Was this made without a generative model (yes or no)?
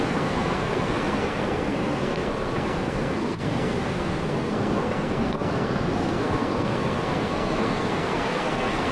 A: no